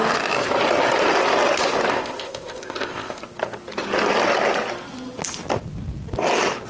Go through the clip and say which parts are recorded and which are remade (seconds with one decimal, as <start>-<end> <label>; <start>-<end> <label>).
0.0-1.9 recorded; 1.9-3.2 remade; 3.2-6.7 recorded